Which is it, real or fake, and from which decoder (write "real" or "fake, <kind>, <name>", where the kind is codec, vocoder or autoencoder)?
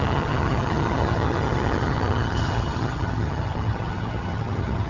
fake, vocoder, HiFi-GAN